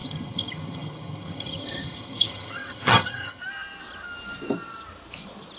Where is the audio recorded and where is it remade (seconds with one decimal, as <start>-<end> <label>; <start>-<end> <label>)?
0.0-3.4 remade; 3.4-5.6 recorded